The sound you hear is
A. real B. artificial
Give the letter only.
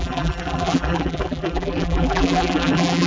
B